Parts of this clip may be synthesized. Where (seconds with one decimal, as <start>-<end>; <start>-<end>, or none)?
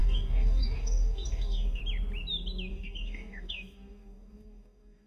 0.0-1.8; 2.7-5.1